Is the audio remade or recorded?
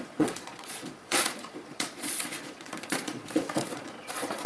remade